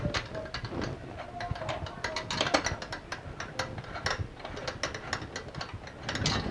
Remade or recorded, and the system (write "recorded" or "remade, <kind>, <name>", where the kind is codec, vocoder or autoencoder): recorded